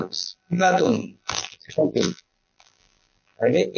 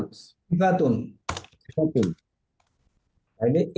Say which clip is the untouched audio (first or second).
second